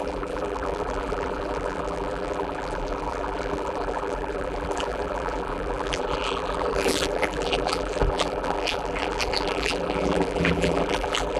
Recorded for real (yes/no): no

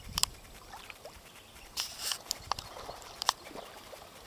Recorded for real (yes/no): no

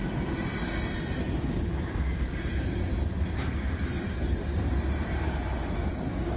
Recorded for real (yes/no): yes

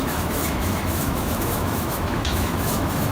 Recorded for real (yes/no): no